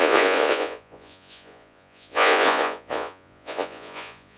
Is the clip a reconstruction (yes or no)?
yes